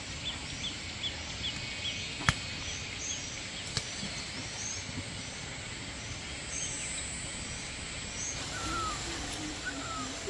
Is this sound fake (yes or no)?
no